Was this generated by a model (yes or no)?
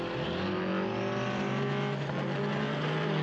no